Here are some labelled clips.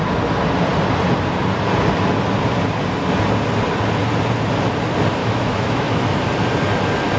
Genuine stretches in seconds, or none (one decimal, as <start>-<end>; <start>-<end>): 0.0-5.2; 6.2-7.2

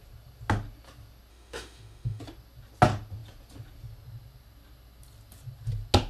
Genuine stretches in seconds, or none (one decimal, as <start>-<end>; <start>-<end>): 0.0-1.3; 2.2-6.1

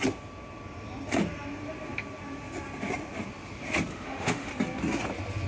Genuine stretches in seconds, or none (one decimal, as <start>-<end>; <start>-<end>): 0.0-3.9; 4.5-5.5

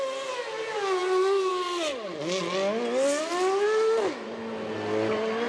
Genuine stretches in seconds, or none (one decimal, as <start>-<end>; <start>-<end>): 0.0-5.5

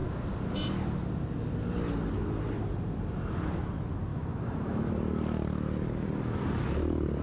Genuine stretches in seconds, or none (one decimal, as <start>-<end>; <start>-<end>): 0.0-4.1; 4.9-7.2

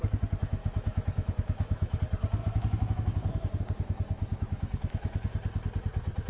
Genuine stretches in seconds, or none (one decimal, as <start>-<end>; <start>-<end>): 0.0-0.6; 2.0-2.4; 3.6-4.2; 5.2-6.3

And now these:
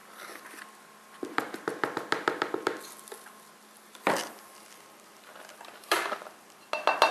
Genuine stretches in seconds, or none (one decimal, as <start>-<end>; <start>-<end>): 0.0-7.1